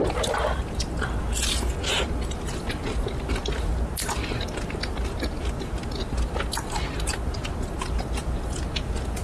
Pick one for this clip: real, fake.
real